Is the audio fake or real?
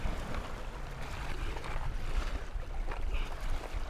fake